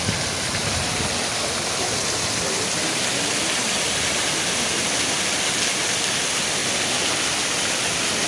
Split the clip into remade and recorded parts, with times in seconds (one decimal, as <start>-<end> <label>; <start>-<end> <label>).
0.0-8.3 recorded